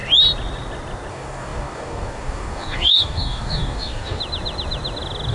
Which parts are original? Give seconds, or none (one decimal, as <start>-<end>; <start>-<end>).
0.0-1.1; 4.2-5.3